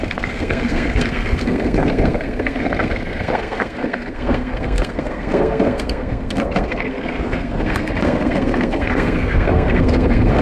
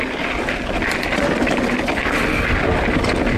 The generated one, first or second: first